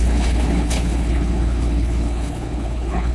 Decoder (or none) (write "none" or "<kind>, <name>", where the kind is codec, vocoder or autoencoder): codec, HILCodec